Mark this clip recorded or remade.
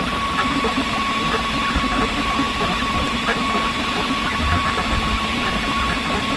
recorded